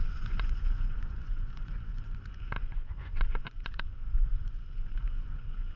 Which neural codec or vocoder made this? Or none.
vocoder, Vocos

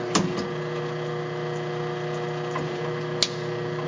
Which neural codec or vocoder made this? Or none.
none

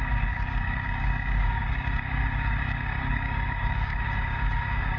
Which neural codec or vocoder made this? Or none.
codec, DAC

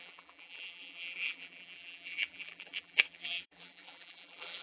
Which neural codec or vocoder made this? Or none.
vocoder, BigVGAN v2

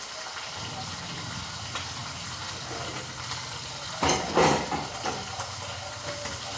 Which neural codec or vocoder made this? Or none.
none